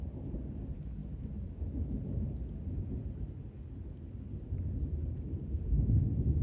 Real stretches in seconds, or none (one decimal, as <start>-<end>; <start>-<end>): 0.0-5.4; 6.0-6.4